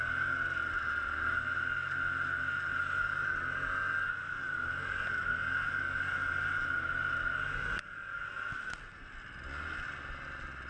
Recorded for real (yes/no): yes